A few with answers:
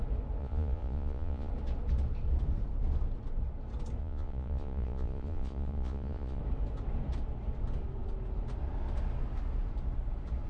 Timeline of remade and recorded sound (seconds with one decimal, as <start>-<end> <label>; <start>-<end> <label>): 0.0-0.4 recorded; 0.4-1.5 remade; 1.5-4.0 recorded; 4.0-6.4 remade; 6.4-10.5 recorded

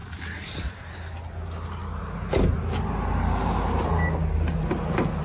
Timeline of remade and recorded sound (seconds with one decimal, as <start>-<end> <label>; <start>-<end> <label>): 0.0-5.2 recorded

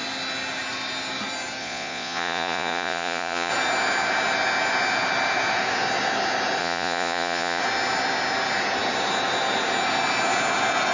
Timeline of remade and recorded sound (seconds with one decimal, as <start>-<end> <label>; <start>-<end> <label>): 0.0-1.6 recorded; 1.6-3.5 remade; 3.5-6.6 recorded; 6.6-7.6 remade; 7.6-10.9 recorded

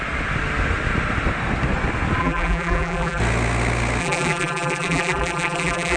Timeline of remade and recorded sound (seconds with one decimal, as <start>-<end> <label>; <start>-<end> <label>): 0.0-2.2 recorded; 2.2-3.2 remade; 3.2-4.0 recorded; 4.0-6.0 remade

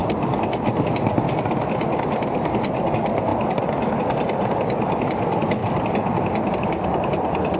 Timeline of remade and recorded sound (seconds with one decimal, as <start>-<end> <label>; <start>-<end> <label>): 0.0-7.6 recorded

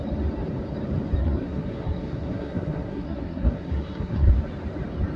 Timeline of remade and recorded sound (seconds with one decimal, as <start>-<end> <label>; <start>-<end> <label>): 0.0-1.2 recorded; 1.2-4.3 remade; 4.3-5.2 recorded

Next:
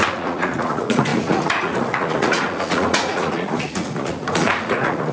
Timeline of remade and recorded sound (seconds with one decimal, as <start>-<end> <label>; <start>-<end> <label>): 0.0-5.1 remade